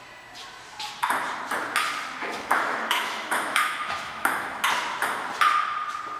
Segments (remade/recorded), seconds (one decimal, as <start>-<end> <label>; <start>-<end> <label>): 0.0-2.2 recorded; 2.2-4.6 remade; 4.6-6.2 recorded